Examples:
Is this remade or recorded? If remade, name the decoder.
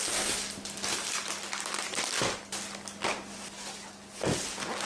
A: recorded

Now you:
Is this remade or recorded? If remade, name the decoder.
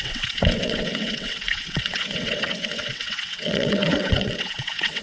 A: remade, vocoder, WaveNeXt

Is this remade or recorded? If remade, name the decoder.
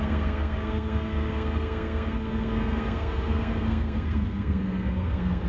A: remade, codec, SNAC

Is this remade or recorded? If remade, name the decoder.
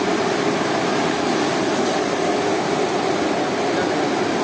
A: recorded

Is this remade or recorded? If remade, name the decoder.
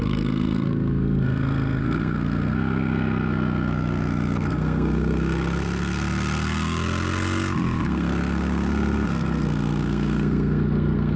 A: remade, codec, SNAC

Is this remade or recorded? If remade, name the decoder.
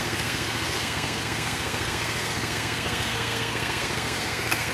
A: remade, codec, SNAC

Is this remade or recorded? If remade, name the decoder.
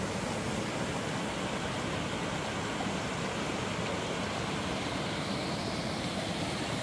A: recorded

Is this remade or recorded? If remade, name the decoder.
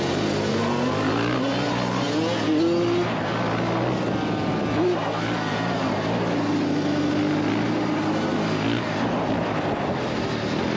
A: recorded